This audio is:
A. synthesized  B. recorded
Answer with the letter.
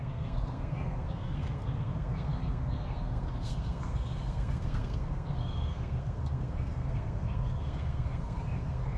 A